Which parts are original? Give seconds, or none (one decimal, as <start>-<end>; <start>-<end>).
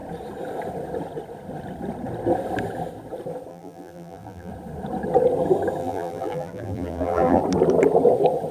0.0-3.5; 4.5-5.8; 7.4-8.5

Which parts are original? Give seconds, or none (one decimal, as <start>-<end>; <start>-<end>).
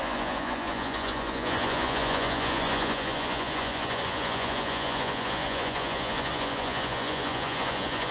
none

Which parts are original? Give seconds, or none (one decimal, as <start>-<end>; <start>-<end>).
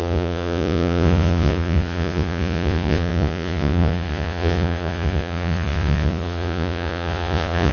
none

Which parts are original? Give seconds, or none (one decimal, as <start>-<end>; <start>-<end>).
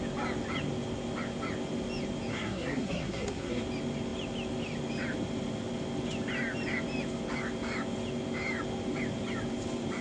0.0-2.3; 3.6-10.0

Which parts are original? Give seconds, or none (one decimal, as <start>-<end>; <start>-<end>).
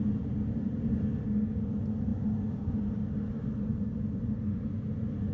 0.0-5.3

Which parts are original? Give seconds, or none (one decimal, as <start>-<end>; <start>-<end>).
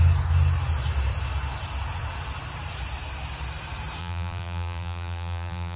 0.0-4.0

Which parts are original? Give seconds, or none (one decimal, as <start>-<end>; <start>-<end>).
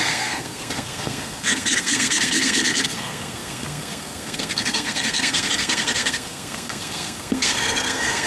none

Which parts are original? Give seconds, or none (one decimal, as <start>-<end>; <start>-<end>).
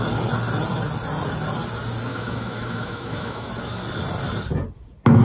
0.0-2.1; 3.5-5.2